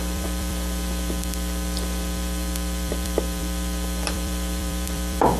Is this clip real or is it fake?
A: fake